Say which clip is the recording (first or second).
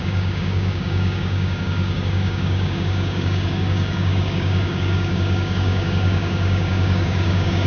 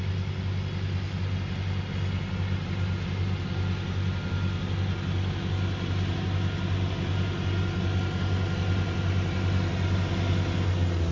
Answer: second